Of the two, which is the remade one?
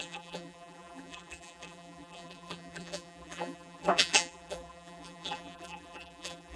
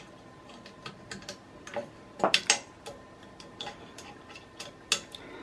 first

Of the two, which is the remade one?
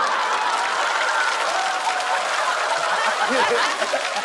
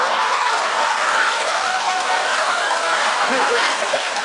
second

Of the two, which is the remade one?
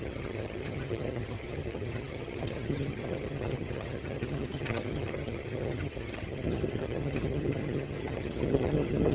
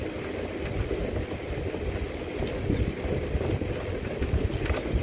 first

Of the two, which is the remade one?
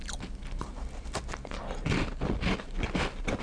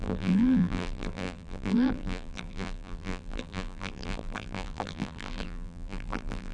second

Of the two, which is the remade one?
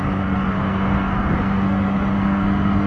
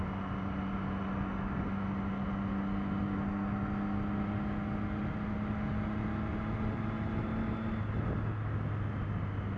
first